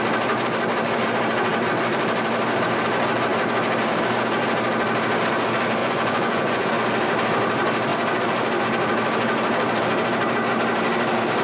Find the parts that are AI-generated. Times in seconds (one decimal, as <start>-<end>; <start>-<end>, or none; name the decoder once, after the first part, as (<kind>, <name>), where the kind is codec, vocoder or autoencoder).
5.8-6.7 (vocoder, Vocos)